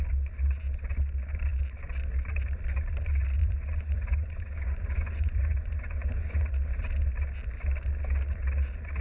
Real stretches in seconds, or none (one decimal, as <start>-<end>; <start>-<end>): 0.0-3.4; 6.5-9.0